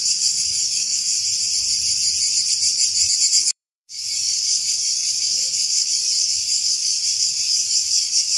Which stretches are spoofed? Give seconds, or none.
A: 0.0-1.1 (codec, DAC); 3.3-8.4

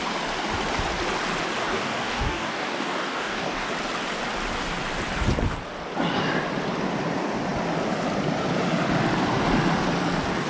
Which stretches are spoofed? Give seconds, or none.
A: 1.6-3.7 (codec, DAC)

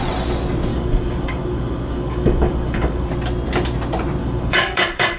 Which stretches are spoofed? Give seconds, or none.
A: 0.7-3.1 (codec, DAC); 4.2-5.2

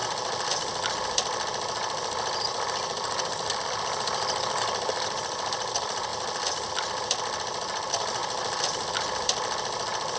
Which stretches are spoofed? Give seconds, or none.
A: none

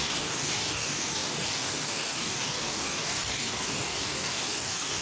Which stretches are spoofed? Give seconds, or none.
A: 0.0-5.0 (codec, DAC)

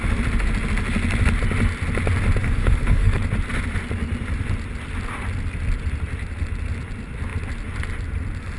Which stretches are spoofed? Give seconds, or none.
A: 2.4-3.2 (codec, DAC)

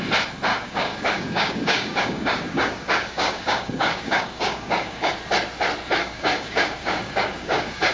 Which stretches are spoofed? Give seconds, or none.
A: 0.5-5.1 (codec, DAC); 6.0-7.9

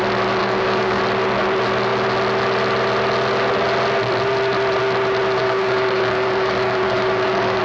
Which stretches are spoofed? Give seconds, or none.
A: 0.4-1.0 (codec, DAC); 5.4-7.6